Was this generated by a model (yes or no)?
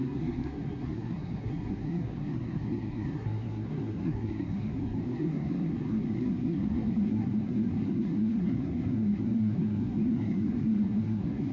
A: yes